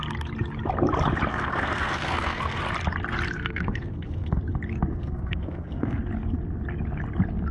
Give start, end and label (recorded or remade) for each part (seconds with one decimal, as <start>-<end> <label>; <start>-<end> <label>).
0.0-1.3 recorded; 1.3-2.6 remade; 2.6-3.4 recorded; 3.4-4.4 remade; 4.4-4.9 recorded; 4.9-6.0 remade; 6.0-7.5 recorded